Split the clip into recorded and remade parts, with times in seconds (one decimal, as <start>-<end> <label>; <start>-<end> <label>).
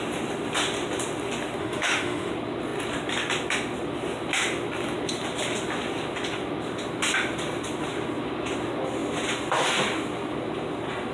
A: 0.0-1.6 recorded; 1.6-2.3 remade; 2.3-11.1 recorded